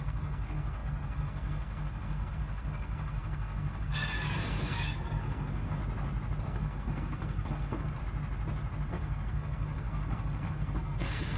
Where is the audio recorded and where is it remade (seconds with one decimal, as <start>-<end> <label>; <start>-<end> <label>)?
0.0-5.8 remade; 5.8-6.4 recorded; 6.4-8.0 remade; 8.0-8.9 recorded; 8.9-11.4 remade